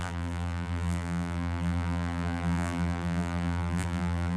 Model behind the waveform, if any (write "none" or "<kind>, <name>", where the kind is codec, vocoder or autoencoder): vocoder, BigVGAN v2